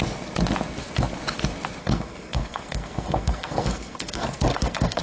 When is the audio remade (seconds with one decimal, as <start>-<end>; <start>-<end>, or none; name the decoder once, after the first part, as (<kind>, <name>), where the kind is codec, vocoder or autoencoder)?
1.8-5.0 (codec, SNAC)